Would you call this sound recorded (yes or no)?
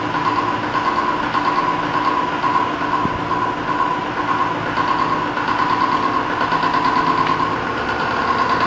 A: yes